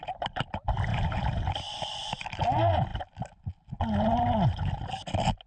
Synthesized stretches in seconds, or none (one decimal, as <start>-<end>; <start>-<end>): 0.9-1.8